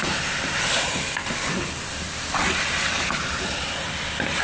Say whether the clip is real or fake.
fake